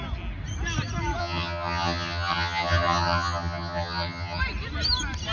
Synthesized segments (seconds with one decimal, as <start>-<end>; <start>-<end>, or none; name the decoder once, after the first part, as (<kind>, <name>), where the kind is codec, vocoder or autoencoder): 1.2-4.4 (vocoder, HiFi-GAN)